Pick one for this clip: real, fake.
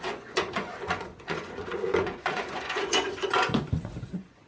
fake